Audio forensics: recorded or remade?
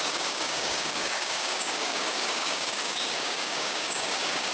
remade